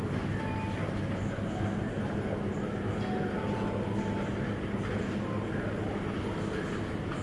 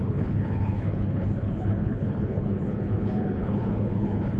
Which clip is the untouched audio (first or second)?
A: first